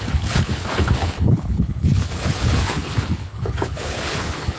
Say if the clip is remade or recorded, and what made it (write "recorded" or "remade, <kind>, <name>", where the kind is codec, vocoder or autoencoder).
remade, codec, HILCodec